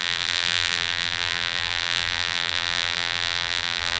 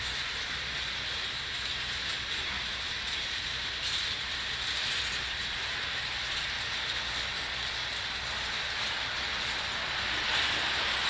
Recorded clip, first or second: second